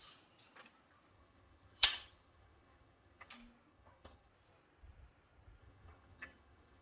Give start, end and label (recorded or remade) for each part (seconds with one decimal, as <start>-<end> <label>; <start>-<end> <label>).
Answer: 0.0-1.1 recorded; 1.1-3.3 remade; 3.3-3.7 recorded; 3.7-4.3 remade; 4.3-5.6 recorded; 5.6-6.8 remade

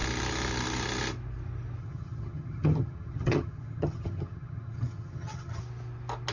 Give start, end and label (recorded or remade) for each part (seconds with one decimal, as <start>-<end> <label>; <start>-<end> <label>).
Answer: 0.0-1.8 recorded; 1.8-5.6 remade; 5.6-6.3 recorded

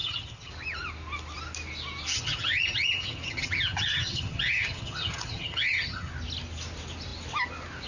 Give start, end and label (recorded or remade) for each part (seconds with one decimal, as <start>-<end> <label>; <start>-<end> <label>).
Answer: 0.0-0.5 remade; 0.5-2.1 recorded; 2.1-6.1 remade; 6.1-7.9 recorded